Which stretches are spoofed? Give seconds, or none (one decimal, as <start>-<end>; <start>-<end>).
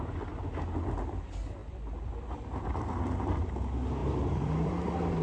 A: 1.6-2.7; 4.0-4.7